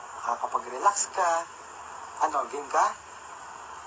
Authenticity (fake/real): real